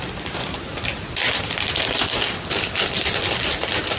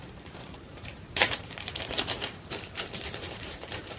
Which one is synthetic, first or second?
second